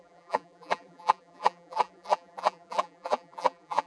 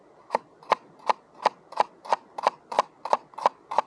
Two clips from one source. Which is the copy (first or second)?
first